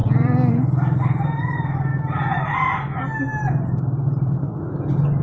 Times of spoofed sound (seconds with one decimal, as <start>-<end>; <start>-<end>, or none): 0.0-0.5; 3.3-4.5